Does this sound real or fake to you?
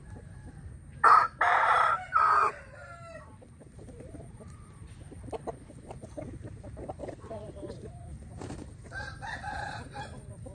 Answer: fake